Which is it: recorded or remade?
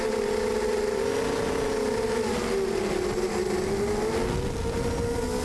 recorded